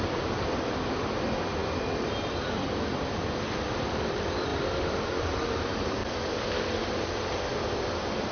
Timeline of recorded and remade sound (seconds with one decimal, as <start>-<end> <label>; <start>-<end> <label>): 0.0-4.5 remade; 4.5-5.2 recorded; 5.2-8.3 remade